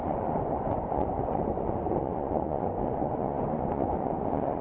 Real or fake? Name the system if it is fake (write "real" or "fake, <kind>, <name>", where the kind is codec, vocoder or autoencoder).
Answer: fake, vocoder, Vocos